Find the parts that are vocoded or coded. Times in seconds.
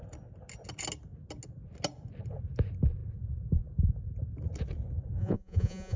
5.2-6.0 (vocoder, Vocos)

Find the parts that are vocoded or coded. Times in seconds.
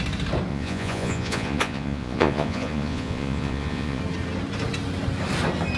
0.5-4.0 (vocoder, Vocos)